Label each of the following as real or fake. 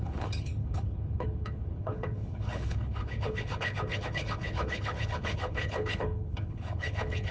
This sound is fake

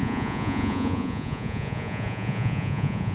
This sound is fake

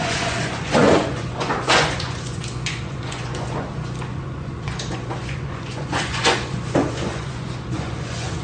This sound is fake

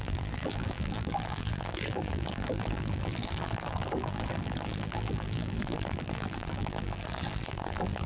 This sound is fake